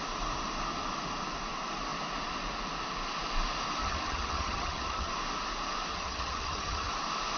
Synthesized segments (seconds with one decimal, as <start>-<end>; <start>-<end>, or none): 3.8-5.1; 5.9-6.9